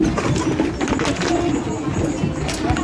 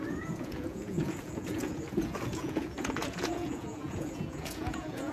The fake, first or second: second